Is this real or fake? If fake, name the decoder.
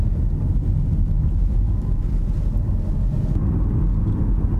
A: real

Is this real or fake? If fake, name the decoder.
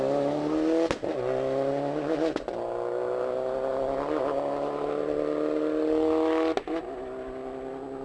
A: real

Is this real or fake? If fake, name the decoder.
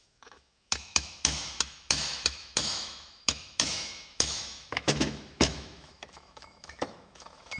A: fake, autoencoder, DAC-VAE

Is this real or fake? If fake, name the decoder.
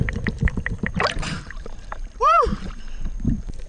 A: fake, vocoder, BigVGAN v2